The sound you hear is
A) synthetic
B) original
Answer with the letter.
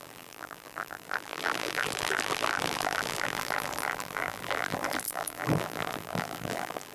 A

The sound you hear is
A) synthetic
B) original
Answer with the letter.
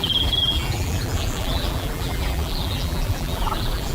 A